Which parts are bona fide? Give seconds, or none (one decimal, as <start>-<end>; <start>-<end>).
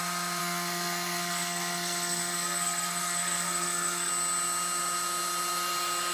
0.0-0.4; 4.1-6.1